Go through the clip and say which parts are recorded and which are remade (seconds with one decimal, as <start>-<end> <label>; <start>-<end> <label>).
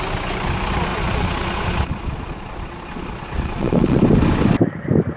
0.0-0.9 recorded; 0.9-4.0 remade; 4.0-5.2 recorded